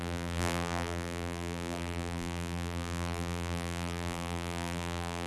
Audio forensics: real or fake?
fake